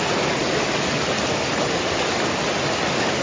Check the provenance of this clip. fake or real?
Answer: real